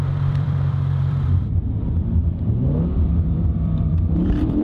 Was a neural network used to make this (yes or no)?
yes